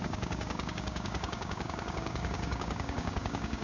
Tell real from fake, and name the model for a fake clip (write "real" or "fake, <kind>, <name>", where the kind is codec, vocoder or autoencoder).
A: fake, codec, DAC